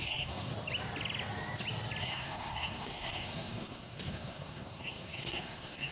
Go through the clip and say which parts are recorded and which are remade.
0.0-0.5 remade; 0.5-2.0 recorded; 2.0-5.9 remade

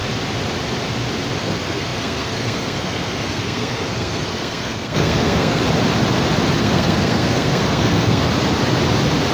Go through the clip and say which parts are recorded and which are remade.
0.0-1.4 recorded; 1.4-5.6 remade; 5.6-6.6 recorded; 6.6-8.2 remade; 8.2-9.3 recorded

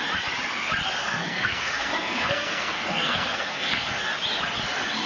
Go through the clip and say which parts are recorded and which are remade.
0.0-1.0 recorded; 1.0-4.1 remade; 4.1-5.1 recorded

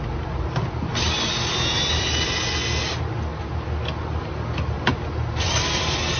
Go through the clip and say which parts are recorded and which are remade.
0.0-6.2 recorded

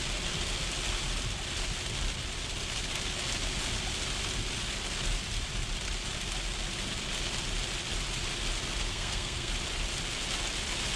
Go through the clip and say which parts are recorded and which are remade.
0.0-8.9 recorded; 8.9-9.5 remade; 9.5-11.0 recorded

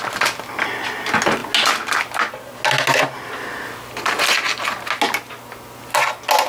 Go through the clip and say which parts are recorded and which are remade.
0.0-6.5 recorded